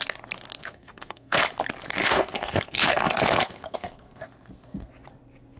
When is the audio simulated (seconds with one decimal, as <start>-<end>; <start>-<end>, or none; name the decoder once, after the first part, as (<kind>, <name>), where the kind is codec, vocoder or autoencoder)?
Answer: 0.6-1.4 (codec, SNAC); 2.0-4.9